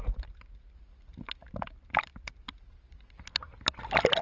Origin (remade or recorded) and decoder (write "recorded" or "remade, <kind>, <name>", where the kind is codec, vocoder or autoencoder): recorded